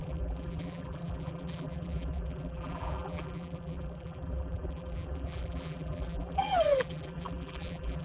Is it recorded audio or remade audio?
remade